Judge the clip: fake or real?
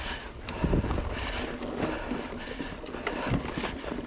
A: real